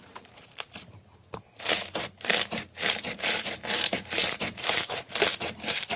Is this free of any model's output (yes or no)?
no